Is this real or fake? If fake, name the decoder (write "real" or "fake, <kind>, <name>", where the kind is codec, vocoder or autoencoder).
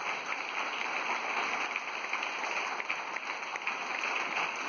real